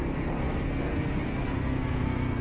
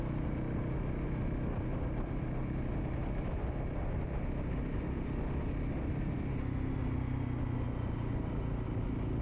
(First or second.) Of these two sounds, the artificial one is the first